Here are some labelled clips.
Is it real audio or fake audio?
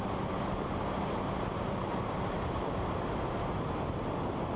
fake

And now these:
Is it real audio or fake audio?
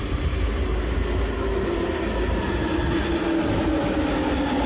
real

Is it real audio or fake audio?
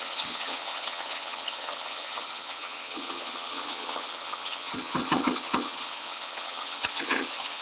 fake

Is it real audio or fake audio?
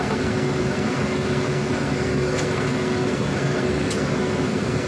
fake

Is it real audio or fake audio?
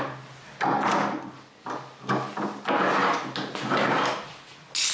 real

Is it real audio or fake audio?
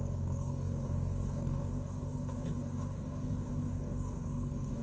fake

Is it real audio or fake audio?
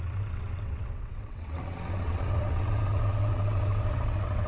fake